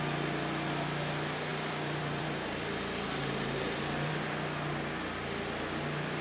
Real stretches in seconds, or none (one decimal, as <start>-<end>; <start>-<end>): 0.0-1.5; 4.1-6.2